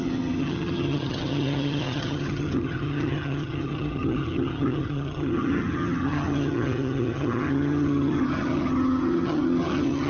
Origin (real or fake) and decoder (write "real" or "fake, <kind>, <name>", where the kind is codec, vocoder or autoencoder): fake, vocoder, HiFi-GAN